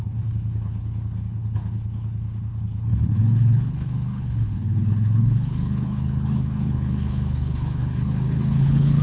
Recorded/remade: remade